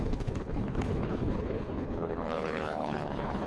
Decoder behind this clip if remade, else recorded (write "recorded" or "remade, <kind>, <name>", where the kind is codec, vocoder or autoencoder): remade, codec, HILCodec